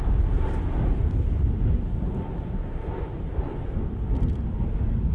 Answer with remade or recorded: recorded